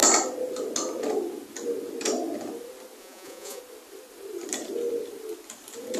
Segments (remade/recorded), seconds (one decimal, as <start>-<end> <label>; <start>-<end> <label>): 0.0-3.0 recorded; 3.0-3.6 remade; 3.6-6.0 recorded